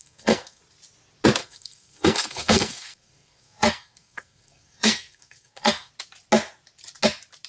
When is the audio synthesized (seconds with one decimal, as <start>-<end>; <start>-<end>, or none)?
0.0-0.6; 1.4-5.9